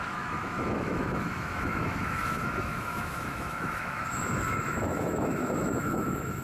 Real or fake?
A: fake